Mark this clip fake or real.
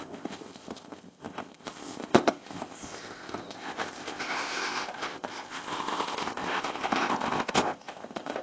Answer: fake